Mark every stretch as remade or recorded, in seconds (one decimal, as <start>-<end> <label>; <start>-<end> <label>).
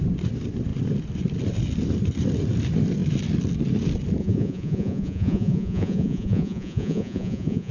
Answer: 0.0-4.2 recorded; 4.2-7.7 remade